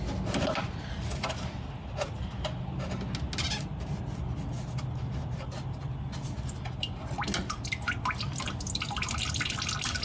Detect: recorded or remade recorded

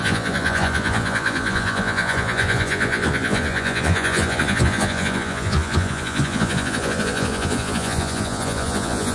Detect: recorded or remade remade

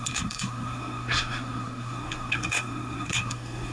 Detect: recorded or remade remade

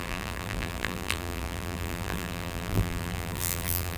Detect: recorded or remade remade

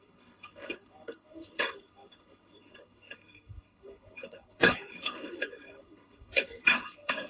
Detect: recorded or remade remade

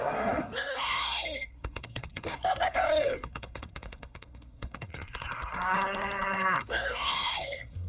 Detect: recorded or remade remade